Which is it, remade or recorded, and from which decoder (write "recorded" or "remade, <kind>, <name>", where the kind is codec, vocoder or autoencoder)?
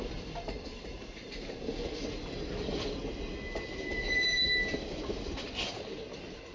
recorded